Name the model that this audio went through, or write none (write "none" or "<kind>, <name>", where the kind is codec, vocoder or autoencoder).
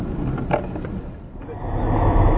none